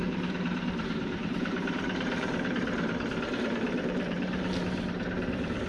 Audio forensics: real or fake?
fake